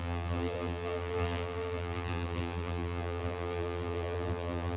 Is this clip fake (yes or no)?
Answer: yes